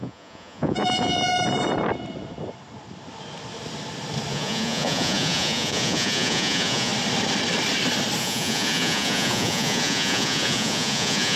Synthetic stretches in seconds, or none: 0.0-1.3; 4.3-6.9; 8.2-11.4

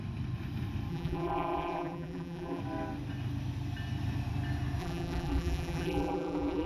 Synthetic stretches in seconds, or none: 0.9-2.6; 4.8-6.7

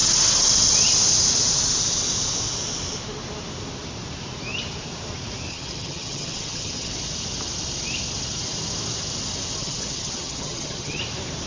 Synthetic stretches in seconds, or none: 5.5-6.9; 9.6-11.0

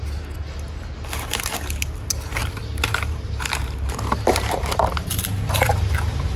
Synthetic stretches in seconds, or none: 2.4-6.4

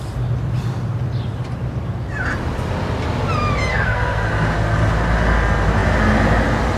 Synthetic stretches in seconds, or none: 3.7-4.3